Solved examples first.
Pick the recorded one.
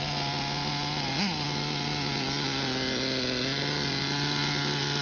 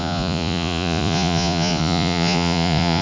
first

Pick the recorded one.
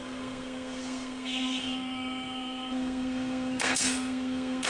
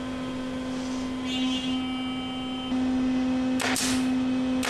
second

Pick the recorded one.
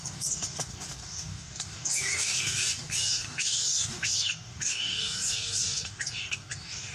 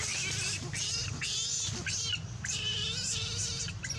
second